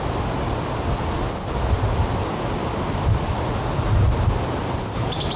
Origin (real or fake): real